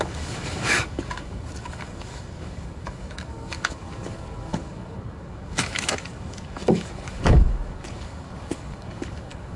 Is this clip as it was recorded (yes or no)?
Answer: no